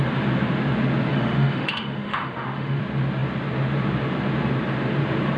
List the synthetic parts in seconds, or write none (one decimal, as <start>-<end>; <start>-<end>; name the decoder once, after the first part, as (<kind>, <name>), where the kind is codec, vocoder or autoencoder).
1.1-2.8 (autoencoder, DAC-VAE)